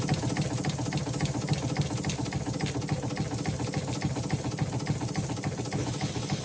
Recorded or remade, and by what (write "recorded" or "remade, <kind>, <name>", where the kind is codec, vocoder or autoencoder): recorded